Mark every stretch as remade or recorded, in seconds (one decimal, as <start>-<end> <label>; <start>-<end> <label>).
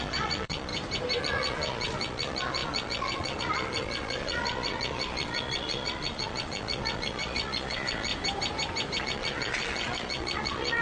0.0-0.7 remade; 0.7-1.2 recorded; 1.2-8.1 remade; 8.1-9.0 recorded; 9.0-10.8 remade